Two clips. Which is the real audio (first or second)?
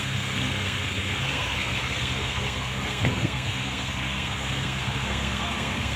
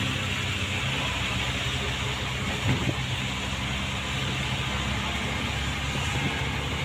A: second